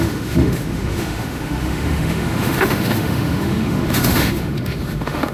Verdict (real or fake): fake